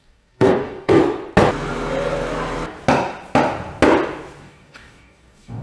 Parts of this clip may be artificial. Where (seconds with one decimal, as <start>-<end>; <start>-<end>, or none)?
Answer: 0.0-1.0; 4.4-5.6